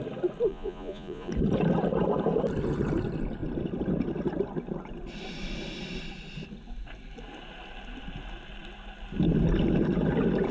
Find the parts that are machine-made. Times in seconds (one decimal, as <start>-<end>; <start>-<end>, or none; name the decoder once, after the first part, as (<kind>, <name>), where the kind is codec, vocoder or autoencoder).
0.5-1.3 (vocoder, Vocos)